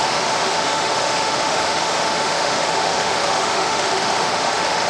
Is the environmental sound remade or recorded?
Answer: remade